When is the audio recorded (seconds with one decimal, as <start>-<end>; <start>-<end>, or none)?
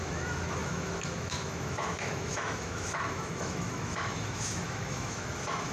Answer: none